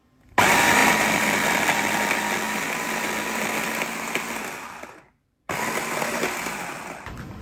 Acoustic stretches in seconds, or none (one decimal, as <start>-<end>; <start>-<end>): 0.0-7.4